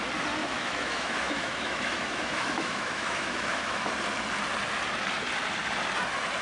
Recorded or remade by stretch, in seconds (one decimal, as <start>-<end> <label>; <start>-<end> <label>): 0.0-0.4 recorded; 0.4-3.9 remade; 3.9-6.4 recorded